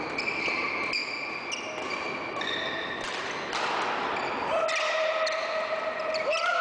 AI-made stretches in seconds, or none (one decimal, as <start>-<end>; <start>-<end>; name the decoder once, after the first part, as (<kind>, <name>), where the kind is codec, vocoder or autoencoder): none